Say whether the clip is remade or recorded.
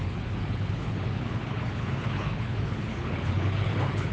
remade